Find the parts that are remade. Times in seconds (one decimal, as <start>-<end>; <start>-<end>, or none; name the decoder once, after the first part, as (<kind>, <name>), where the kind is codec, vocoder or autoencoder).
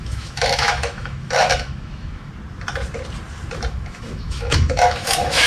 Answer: 0.0-2.3 (autoencoder, DAC-VAE); 3.7-5.5